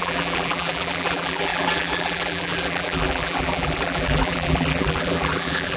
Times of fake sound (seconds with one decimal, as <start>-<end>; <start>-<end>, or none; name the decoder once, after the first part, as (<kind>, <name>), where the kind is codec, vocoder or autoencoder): 0.0-5.8 (vocoder, BigVGAN v2)